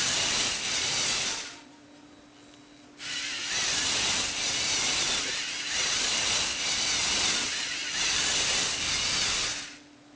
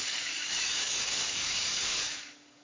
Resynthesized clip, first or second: second